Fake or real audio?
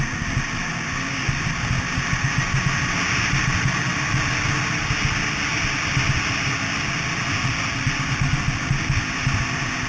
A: real